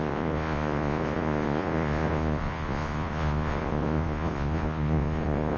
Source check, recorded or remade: remade